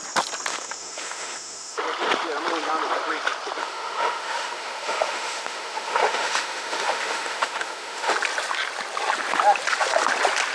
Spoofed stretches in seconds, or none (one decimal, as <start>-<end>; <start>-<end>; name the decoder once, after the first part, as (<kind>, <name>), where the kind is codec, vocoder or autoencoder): 0.5-1.8 (autoencoder, DAC-VAE); 3.6-8.1